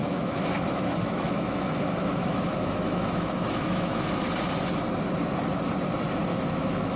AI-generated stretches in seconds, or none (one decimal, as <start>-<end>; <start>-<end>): 0.0-4.2; 6.3-7.0